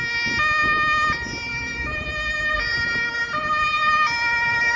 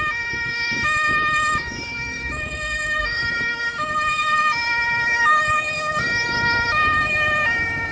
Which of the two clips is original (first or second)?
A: first